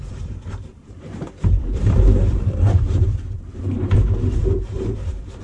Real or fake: fake